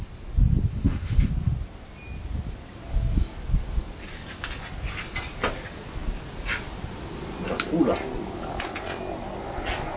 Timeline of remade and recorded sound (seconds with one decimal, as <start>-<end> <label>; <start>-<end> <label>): 0.0-0.7 recorded; 0.7-1.3 remade; 1.3-10.0 recorded